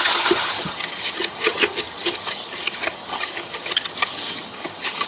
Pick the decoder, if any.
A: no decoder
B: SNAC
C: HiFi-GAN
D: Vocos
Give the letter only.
C